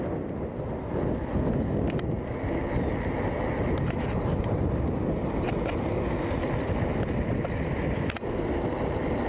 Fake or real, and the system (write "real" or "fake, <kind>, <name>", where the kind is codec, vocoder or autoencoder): real